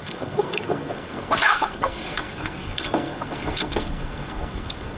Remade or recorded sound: remade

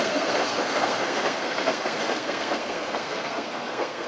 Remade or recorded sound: remade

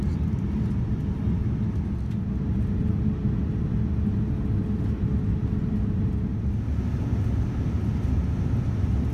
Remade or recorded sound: recorded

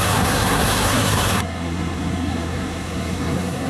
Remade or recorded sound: remade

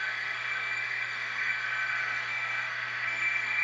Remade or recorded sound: remade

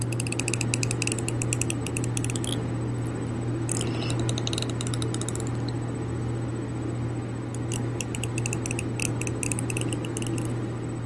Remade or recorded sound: recorded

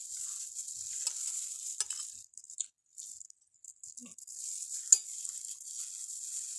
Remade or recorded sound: recorded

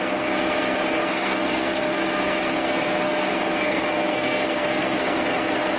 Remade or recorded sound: remade